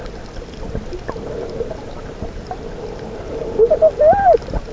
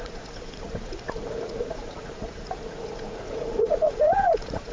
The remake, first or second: second